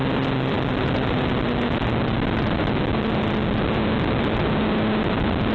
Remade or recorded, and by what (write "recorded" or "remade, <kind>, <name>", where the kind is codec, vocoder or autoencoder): recorded